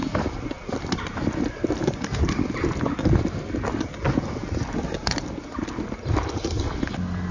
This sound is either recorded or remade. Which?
recorded